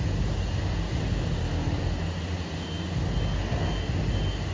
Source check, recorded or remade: recorded